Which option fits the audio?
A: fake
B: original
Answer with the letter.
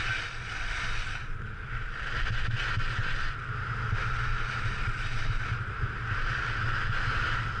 B